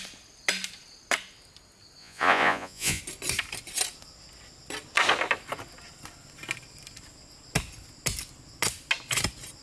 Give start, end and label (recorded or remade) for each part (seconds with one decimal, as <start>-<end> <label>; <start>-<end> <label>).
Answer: 0.0-2.0 recorded; 2.0-3.0 remade; 3.0-9.6 recorded